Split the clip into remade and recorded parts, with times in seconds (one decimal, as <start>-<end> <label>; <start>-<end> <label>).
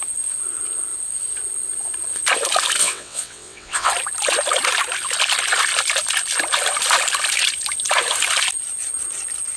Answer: 0.0-2.8 recorded; 2.8-3.9 remade; 3.9-9.6 recorded